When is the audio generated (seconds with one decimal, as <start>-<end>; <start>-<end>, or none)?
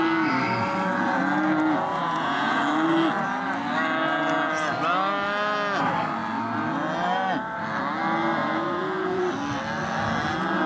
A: 1.9-2.6; 8.4-9.2